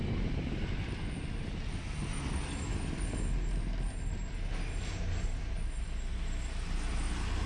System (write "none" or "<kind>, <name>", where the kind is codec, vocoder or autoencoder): none